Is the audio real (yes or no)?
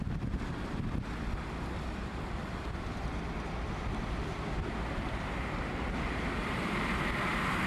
yes